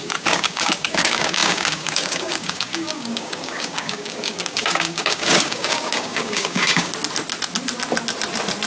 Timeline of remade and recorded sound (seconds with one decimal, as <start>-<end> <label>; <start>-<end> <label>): 0.0-6.9 remade; 6.9-8.7 recorded